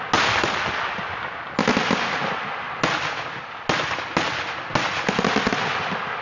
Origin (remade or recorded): recorded